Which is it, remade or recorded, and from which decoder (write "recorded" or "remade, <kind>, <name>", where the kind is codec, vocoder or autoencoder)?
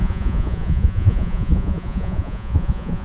remade, vocoder, Vocos